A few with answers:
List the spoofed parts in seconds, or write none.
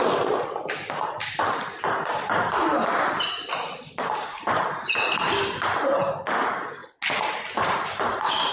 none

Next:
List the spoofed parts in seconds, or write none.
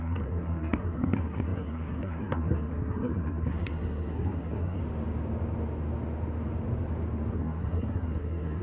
0.0-4.8 (codec, SNAC); 7.3-8.6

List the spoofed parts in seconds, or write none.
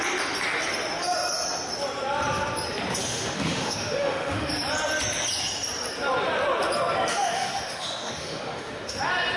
3.1-4.5 (autoencoder, DAC-VAE); 7.1-9.0